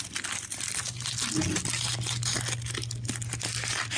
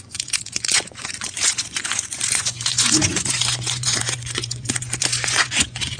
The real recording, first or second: first